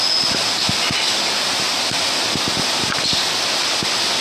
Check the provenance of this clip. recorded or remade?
recorded